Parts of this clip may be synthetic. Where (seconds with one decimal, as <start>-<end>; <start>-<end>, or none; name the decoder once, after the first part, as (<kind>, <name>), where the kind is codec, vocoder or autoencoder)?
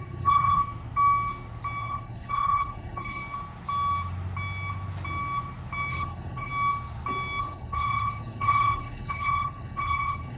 0.0-0.6 (codec, HILCodec); 1.8-3.2; 5.9-6.5; 7.4-10.4